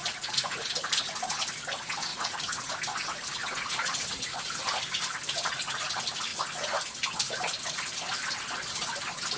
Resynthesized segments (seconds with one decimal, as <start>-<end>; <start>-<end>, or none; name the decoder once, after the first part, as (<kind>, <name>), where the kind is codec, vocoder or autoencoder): 0.0-0.7 (vocoder, Vocos); 2.1-2.7; 3.4-4.6